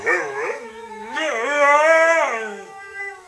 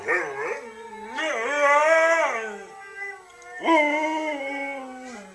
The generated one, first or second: first